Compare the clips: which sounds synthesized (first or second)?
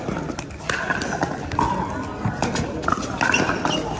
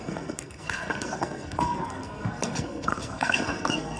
second